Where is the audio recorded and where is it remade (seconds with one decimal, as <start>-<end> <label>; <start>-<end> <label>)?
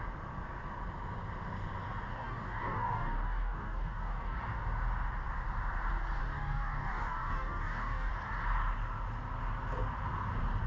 0.0-2.1 recorded; 2.1-4.4 remade; 4.4-6.2 recorded; 6.2-8.1 remade; 8.1-10.7 recorded